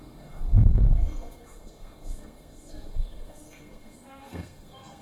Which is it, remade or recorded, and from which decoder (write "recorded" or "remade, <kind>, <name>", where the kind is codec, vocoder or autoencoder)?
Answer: remade, codec, SNAC